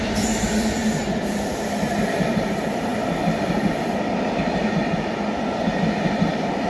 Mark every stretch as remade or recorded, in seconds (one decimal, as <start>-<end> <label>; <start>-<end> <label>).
0.0-2.9 remade; 2.9-6.3 recorded; 6.3-6.7 remade